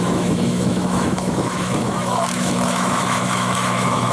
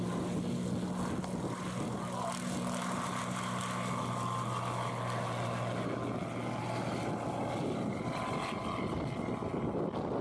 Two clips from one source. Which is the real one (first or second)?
second